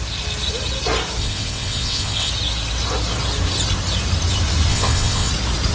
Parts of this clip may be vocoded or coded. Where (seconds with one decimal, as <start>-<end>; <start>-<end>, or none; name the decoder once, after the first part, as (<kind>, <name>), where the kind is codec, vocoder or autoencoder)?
1.2-2.3 (vocoder, WaveNeXt); 4.7-5.3